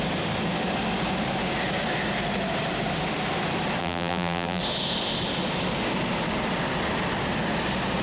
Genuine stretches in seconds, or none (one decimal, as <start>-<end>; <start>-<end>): 0.0-3.8; 4.6-8.0